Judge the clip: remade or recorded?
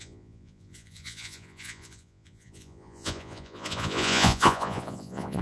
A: remade